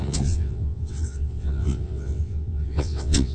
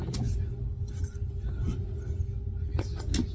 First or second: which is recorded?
second